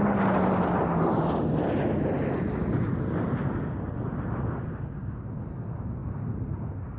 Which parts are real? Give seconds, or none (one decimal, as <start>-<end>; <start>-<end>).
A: 0.0-7.0